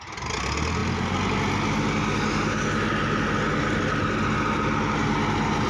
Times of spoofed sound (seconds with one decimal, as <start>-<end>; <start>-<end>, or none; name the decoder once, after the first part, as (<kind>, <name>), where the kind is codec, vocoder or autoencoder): none